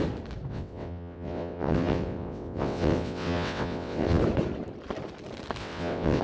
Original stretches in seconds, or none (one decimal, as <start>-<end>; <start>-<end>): 0.0-0.5; 4.2-5.6